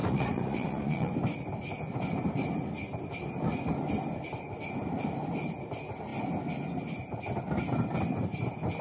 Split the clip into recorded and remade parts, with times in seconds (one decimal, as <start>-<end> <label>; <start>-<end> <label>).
0.0-1.1 remade; 1.1-8.8 recorded